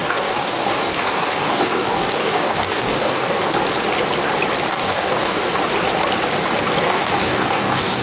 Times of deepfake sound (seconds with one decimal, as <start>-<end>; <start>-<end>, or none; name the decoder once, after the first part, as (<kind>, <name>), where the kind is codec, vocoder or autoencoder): 0.0-3.5 (codec, DAC); 4.7-5.4; 6.8-8.0